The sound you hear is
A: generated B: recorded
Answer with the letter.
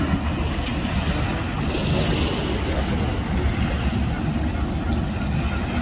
B